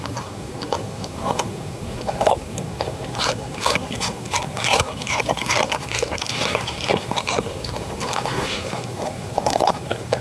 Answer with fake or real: fake